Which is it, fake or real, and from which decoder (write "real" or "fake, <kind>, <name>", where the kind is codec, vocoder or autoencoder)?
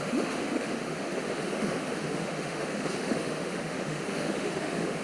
fake, autoencoder, DAC-VAE